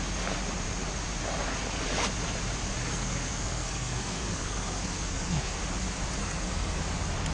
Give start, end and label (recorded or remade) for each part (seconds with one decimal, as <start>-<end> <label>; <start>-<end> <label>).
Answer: 0.0-2.9 recorded; 2.9-5.6 remade; 5.6-6.2 recorded; 6.2-6.8 remade; 6.8-7.3 recorded